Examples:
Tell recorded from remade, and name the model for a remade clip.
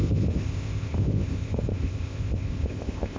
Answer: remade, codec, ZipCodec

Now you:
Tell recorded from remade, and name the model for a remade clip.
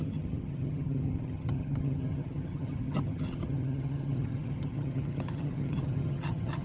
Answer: remade, vocoder, HiFi-GAN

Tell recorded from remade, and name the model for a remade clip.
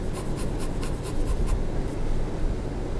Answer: recorded